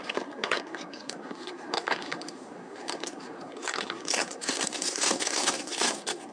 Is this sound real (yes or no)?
no